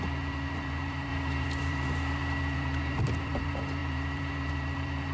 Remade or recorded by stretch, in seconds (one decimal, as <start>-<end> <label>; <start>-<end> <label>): 0.0-5.1 remade